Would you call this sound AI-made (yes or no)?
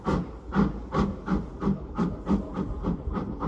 no